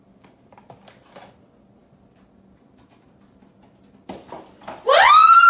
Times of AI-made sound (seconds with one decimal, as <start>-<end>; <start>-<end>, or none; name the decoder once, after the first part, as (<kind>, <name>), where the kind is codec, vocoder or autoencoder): none